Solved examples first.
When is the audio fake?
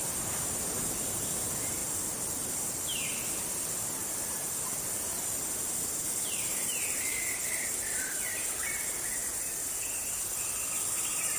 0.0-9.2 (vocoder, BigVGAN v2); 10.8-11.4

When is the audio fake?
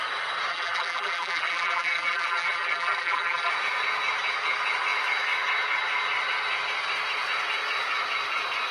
0.5-3.5 (vocoder, BigVGAN v2)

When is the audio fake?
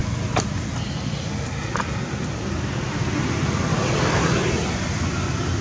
none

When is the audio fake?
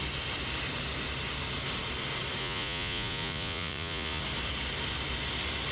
2.4-4.2 (vocoder, Vocos)